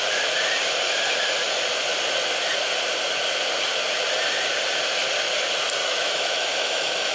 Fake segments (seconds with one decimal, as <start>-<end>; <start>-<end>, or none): 5.8-7.1